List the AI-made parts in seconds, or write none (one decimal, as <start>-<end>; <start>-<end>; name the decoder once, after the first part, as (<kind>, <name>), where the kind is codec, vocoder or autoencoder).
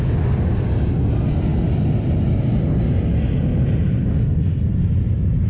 none